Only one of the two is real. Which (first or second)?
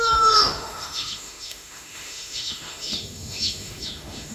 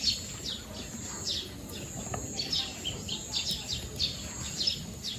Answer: second